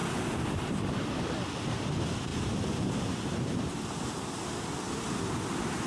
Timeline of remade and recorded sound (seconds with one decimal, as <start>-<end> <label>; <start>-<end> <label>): 0.0-5.9 recorded